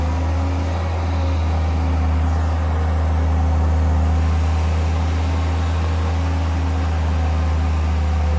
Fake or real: real